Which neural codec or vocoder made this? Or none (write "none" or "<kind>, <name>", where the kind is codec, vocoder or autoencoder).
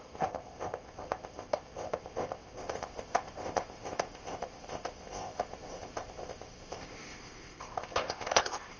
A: codec, ZipCodec